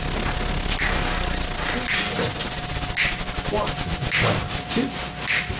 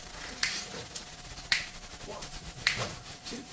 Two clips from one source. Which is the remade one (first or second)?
second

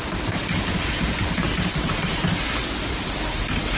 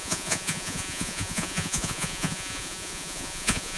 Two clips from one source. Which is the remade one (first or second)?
second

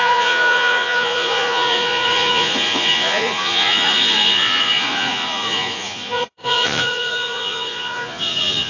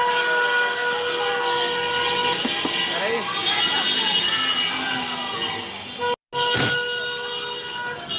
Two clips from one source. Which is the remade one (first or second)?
first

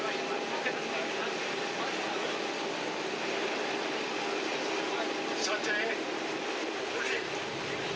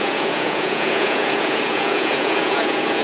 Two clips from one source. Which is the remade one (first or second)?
second